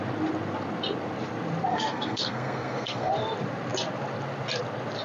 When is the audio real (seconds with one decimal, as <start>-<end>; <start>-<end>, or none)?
0.0-1.7; 3.1-5.0